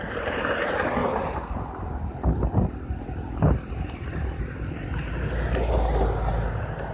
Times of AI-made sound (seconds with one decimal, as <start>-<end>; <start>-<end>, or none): none

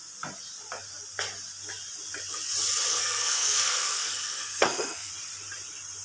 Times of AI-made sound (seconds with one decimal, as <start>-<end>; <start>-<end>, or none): 2.9-5.1

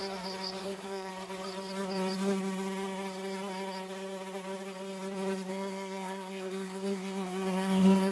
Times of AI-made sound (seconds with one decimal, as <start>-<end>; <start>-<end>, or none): 0.6-1.1; 5.5-8.1

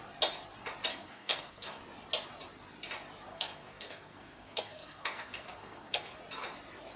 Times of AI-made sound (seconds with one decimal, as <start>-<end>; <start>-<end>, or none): 0.9-1.8; 3.3-6.2

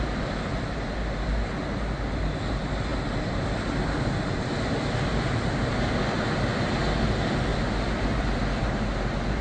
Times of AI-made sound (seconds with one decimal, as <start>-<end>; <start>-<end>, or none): none